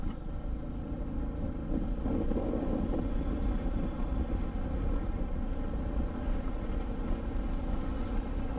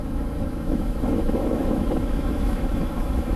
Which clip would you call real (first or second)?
first